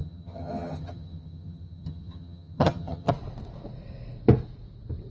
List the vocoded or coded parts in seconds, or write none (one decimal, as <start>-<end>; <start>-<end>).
0.0-3.1